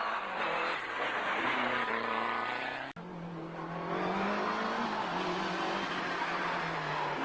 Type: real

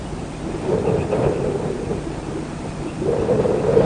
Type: fake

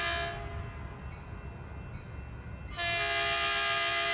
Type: real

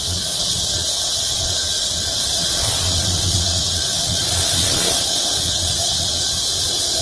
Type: fake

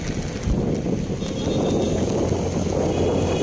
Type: real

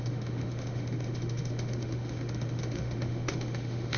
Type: fake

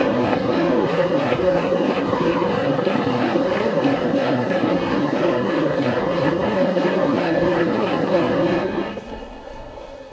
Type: fake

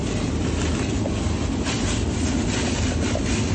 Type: real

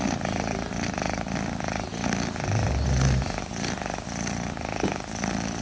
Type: real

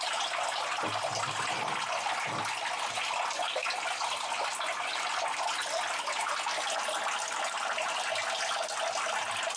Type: real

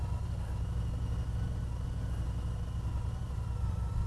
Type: real